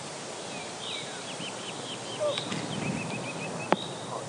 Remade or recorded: recorded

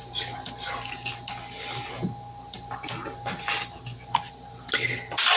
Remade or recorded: recorded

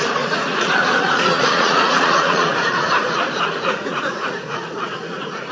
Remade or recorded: remade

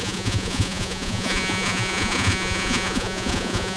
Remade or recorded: remade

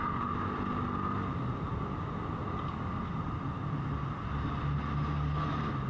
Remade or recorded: recorded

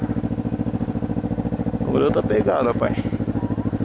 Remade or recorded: recorded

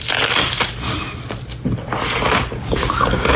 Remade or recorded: recorded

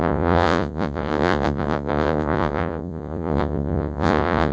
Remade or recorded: remade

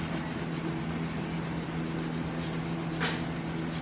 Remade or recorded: recorded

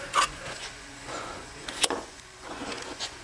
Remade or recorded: remade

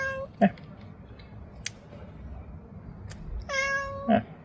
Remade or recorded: recorded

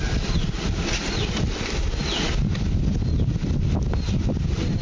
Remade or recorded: recorded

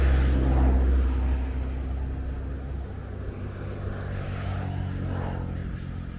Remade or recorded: recorded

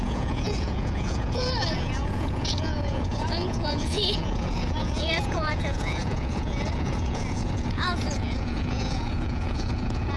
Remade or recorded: remade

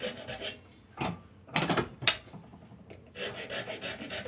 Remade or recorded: recorded